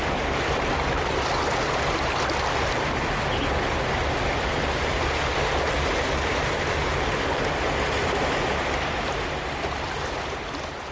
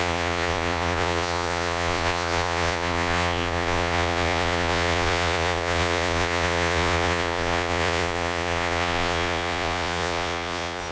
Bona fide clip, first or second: first